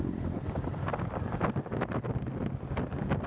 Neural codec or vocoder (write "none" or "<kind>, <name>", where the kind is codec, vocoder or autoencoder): none